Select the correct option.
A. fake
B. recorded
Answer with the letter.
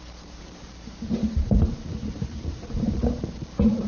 A